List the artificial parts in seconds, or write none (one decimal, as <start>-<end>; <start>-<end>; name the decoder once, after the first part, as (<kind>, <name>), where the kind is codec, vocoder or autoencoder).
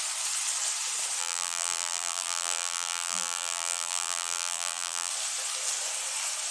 1.2-5.1 (vocoder, BigVGAN v2)